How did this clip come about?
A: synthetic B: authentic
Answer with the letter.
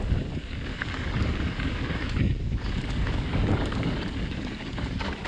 A